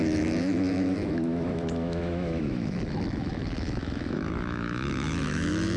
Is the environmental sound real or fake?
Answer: fake